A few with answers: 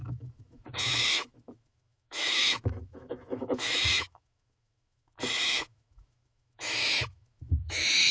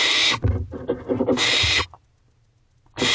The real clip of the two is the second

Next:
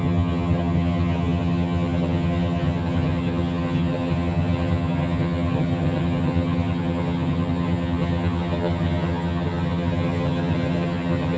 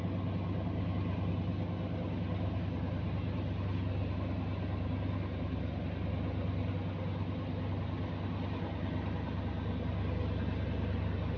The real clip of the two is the second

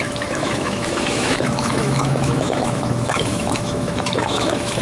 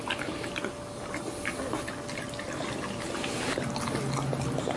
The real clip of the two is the second